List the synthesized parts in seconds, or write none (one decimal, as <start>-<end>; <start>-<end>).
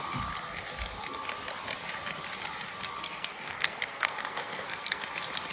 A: 3.0-5.0